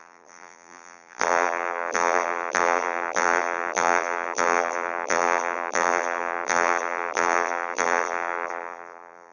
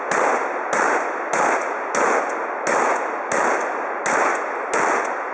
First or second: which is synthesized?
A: first